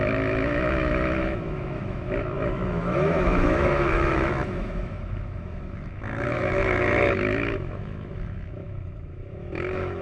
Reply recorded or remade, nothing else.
remade